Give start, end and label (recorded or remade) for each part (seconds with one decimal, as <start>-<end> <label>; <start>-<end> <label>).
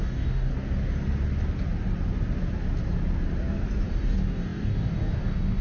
0.0-0.5 remade; 0.5-3.9 recorded; 3.9-5.6 remade